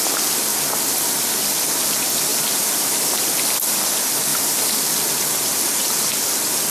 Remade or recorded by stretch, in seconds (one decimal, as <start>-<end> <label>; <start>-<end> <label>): 0.0-0.5 recorded; 0.5-1.3 remade; 1.3-4.3 recorded; 4.3-5.5 remade; 5.5-6.7 recorded

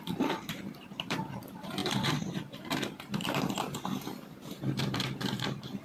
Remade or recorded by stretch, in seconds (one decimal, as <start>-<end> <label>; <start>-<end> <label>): 0.0-5.8 remade

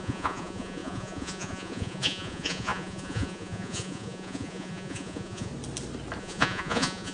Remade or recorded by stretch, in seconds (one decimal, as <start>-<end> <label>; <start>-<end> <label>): 0.0-5.5 remade; 5.5-6.2 recorded; 6.2-7.1 remade

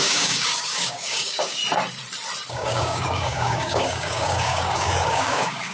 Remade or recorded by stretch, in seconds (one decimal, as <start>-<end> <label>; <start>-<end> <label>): 0.0-1.6 remade; 1.6-2.5 recorded; 2.5-5.7 remade

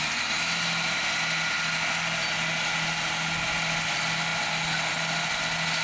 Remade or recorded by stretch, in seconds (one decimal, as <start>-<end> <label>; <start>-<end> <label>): 0.0-5.8 recorded

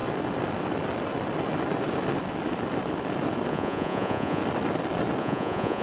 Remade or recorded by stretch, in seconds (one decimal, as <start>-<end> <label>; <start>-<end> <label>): 0.0-3.5 recorded; 3.5-4.4 remade; 4.4-5.2 recorded; 5.2-5.8 remade